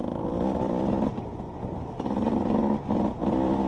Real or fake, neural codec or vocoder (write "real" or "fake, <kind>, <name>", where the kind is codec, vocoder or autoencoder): fake, vocoder, BigVGAN v2